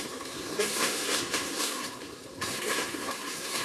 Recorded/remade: remade